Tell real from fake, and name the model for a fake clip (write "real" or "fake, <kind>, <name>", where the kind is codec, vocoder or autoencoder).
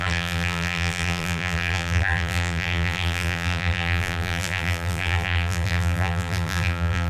fake, vocoder, BigVGAN v2